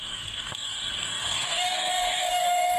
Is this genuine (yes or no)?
no